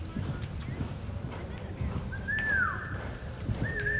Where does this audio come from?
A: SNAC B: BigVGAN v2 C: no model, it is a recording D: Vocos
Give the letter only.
B